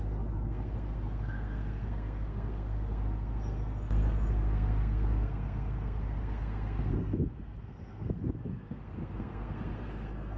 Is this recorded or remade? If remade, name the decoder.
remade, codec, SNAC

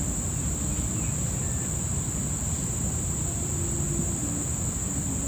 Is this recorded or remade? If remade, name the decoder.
recorded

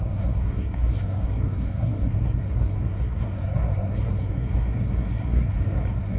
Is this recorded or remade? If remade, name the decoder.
remade, codec, SNAC